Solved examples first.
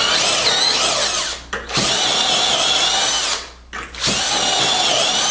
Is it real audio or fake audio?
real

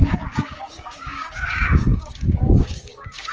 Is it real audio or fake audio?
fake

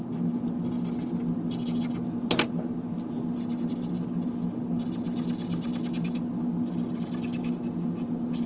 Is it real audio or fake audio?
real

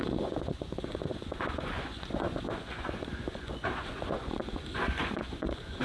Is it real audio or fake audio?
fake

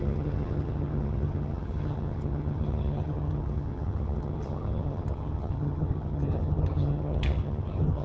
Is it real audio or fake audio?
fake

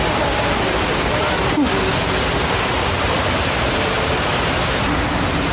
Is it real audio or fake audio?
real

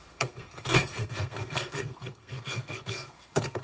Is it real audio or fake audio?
fake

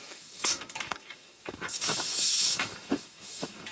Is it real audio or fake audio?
fake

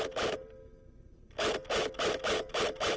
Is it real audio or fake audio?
real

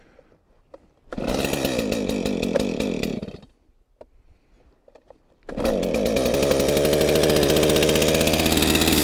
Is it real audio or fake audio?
real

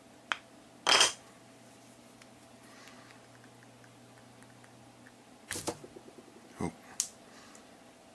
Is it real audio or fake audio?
real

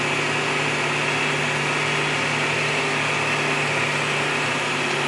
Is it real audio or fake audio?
real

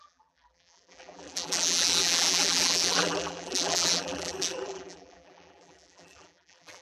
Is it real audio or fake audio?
fake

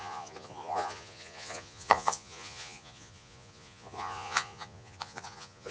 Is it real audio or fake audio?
fake